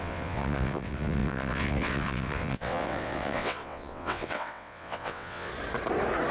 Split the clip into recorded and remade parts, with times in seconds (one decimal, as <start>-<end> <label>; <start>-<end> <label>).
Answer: 0.0-5.5 remade; 5.5-6.3 recorded